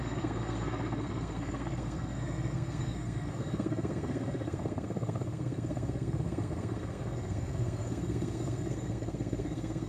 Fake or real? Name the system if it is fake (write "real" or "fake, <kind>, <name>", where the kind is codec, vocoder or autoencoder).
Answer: fake, codec, SNAC